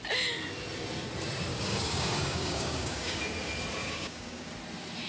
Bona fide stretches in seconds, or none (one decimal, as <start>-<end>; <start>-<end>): 0.0-1.5; 3.2-3.8; 4.5-5.1